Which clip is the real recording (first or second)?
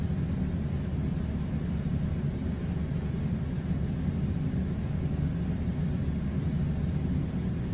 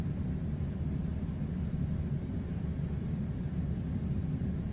first